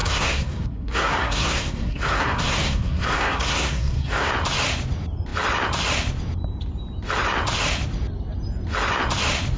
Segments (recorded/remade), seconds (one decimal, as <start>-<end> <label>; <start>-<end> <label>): 0.0-4.3 remade; 4.3-9.6 recorded

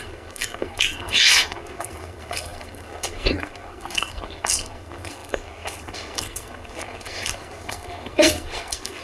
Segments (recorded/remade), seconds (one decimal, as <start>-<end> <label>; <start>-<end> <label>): 0.0-9.0 remade